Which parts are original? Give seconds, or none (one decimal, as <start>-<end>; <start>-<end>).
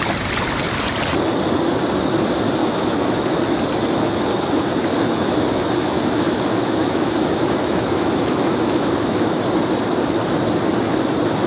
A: 0.0-2.6; 3.4-4.8; 9.4-11.5